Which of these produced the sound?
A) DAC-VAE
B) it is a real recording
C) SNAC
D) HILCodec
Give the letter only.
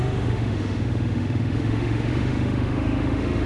A